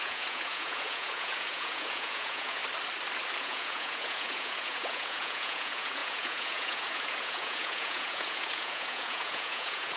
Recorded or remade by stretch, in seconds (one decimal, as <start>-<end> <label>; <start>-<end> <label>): 0.0-2.6 remade; 2.6-3.4 recorded; 3.4-10.0 remade